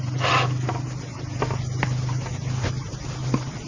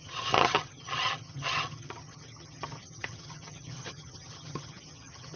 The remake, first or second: second